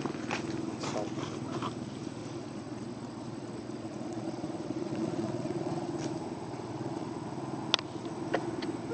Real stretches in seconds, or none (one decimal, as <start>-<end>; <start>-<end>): 0.0-2.2; 5.9-6.5; 7.1-8.9